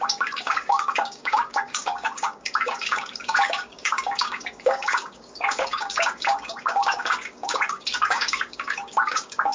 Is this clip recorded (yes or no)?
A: no